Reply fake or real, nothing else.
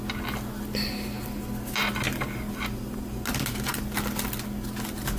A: real